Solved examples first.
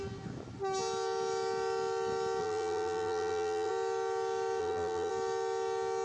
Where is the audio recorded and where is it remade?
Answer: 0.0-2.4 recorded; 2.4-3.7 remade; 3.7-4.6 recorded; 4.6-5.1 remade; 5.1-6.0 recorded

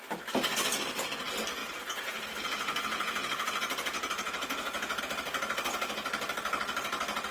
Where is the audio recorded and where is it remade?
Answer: 0.0-1.6 recorded; 1.6-5.0 remade; 5.0-7.3 recorded

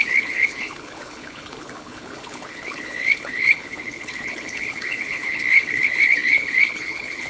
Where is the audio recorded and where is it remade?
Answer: 0.0-7.3 remade

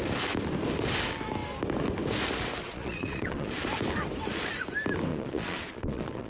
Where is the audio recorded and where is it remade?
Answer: 0.0-2.6 recorded; 2.6-3.5 remade; 3.5-5.1 recorded; 5.1-6.3 remade